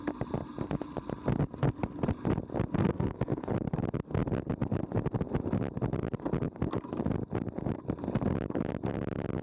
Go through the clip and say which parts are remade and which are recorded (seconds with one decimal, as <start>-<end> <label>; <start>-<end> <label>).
0.0-2.8 recorded; 2.8-3.5 remade; 3.5-9.4 recorded